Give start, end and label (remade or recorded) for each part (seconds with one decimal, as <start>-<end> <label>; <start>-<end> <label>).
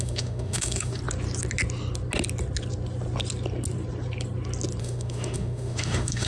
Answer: 0.0-1.0 remade; 1.0-4.8 recorded; 4.8-6.3 remade